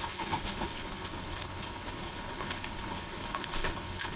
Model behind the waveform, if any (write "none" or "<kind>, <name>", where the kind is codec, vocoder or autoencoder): codec, HILCodec